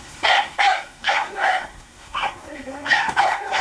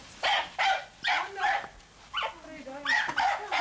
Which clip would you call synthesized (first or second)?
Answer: first